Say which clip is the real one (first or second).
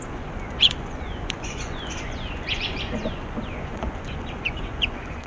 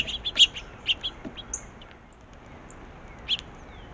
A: second